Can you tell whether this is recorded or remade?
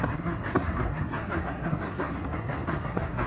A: remade